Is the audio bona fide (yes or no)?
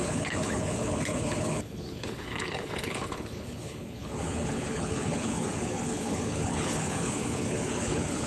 no